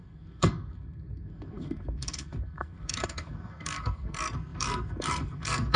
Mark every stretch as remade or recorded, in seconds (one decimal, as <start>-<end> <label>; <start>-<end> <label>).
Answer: 0.0-5.8 remade